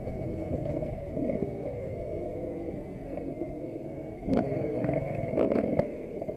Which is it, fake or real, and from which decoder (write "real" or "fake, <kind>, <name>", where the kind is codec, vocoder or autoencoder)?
fake, codec, SNAC